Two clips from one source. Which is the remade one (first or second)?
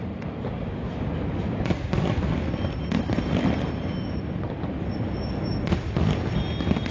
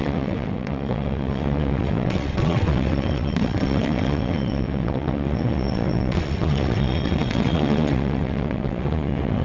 second